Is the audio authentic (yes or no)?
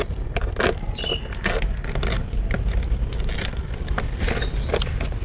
yes